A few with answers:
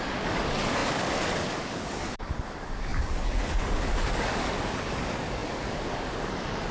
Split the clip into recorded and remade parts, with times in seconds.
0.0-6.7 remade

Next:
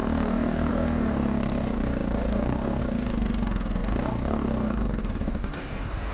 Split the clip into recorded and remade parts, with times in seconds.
0.0-6.1 remade

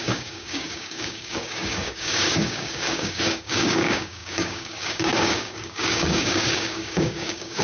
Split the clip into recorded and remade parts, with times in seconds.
0.0-7.6 remade

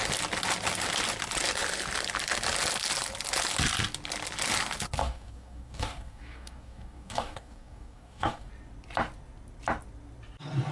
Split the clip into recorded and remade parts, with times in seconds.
0.0-5.0 recorded; 5.0-8.5 remade; 8.5-10.7 recorded

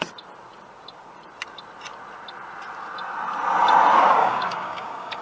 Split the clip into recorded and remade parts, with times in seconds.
0.0-4.2 recorded; 4.2-5.2 remade

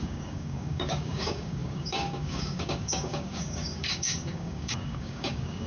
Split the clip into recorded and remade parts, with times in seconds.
0.0-5.7 remade

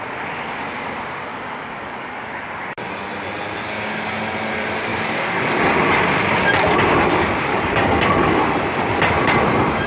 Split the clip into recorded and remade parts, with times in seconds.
0.0-1.3 recorded; 1.3-2.3 remade; 2.3-4.9 recorded; 4.9-5.6 remade; 5.6-7.5 recorded; 7.5-8.4 remade; 8.4-9.9 recorded

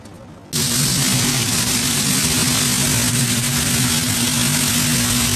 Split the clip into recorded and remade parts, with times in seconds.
0.0-1.3 recorded; 1.3-2.0 remade; 2.0-3.1 recorded; 3.1-3.7 remade; 3.7-5.4 recorded